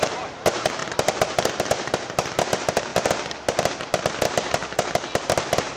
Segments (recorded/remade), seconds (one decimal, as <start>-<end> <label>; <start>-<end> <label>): 0.0-2.9 remade; 2.9-3.7 recorded; 3.7-4.6 remade; 4.6-5.2 recorded; 5.2-5.8 remade